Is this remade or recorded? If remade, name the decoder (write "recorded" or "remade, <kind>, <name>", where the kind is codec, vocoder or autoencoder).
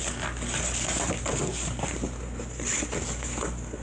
recorded